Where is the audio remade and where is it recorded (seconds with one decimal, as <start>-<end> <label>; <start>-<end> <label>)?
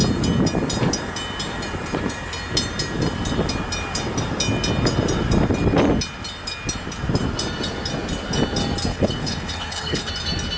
0.0-8.9 recorded; 8.9-10.1 remade; 10.1-10.6 recorded